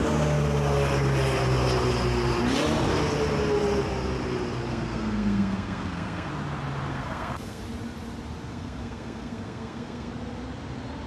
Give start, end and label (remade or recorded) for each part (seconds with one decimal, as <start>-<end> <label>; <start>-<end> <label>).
0.0-4.7 recorded; 4.7-6.3 remade; 6.3-6.9 recorded; 6.9-7.6 remade; 7.6-8.5 recorded; 8.5-10.1 remade; 10.1-11.1 recorded